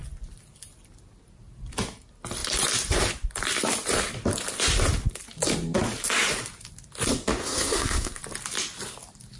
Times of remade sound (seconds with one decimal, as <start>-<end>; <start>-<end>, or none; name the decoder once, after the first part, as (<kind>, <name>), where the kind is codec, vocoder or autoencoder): 7.4-8.2 (codec, SNAC)